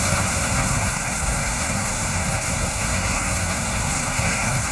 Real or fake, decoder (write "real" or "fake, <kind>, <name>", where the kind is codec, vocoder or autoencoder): fake, codec, SNAC